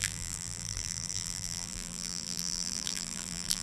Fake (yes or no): yes